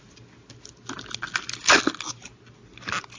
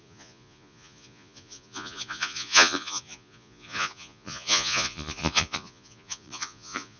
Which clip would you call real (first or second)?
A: first